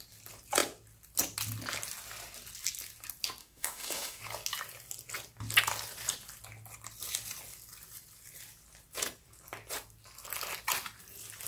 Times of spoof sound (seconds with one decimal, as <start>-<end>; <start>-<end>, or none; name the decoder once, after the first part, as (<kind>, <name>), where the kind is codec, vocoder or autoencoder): 3.4-4.2 (autoencoder, DAC-VAE)